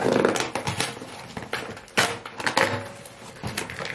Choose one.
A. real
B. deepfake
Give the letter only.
A